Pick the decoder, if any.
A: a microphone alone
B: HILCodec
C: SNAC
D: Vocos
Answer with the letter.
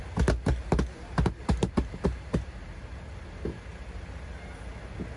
A